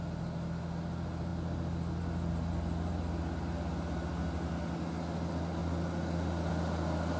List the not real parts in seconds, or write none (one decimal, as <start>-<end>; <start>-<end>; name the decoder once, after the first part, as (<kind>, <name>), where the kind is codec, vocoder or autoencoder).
none